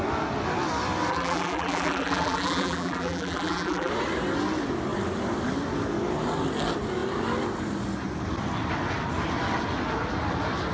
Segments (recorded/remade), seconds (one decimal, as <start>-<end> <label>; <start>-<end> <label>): 0.0-1.1 recorded; 1.1-3.9 remade; 3.9-10.7 recorded